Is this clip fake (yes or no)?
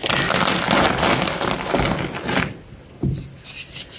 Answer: no